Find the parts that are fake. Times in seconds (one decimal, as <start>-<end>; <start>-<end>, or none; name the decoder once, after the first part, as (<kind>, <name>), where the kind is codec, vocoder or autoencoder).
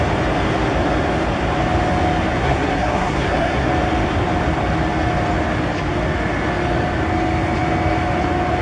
2.4-3.7 (codec, SNAC)